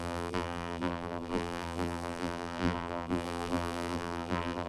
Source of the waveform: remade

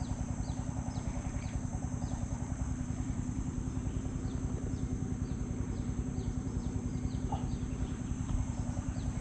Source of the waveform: remade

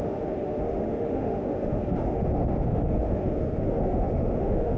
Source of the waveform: remade